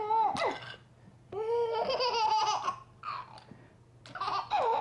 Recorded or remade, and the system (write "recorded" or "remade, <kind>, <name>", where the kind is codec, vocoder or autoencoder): recorded